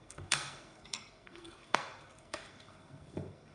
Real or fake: fake